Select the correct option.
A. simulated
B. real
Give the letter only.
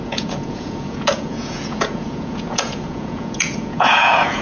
A